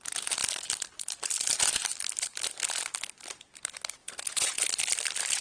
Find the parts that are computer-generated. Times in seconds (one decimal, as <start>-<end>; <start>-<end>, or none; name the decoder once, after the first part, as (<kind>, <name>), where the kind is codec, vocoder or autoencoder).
4.0-4.6 (vocoder, Vocos)